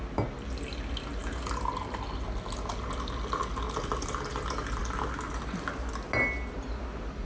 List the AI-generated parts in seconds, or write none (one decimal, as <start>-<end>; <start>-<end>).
none